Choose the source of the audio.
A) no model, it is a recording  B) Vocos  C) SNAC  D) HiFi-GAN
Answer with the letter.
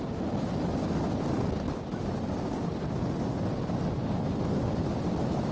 A